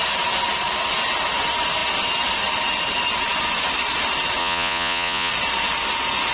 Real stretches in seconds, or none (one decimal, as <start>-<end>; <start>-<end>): 0.0-4.4; 5.3-6.3